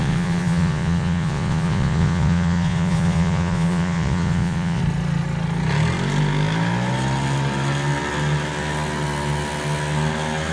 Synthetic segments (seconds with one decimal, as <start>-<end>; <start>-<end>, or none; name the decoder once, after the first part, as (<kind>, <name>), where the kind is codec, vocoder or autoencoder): 0.0-4.8 (vocoder, Vocos)